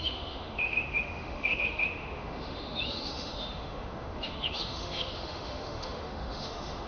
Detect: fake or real fake